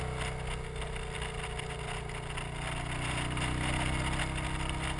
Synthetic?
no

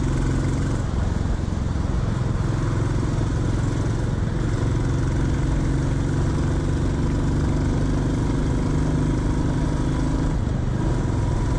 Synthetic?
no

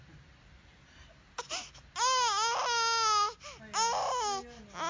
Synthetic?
no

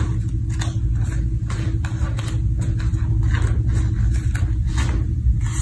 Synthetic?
no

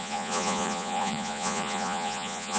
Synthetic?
yes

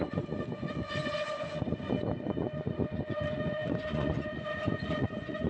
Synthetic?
yes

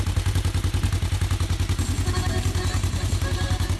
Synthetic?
no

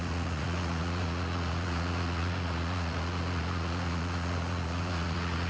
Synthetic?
yes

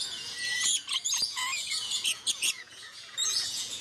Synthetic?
yes